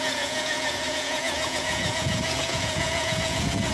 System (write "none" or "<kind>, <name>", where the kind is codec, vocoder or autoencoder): vocoder, Vocos